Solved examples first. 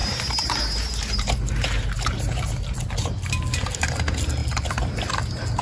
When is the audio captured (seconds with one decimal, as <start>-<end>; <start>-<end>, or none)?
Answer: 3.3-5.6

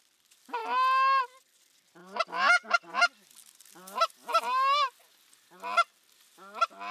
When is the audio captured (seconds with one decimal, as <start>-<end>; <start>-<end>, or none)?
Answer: 0.0-6.9

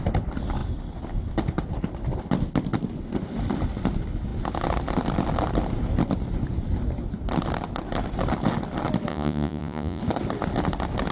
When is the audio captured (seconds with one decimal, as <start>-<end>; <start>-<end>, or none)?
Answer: 0.0-9.1; 10.0-11.1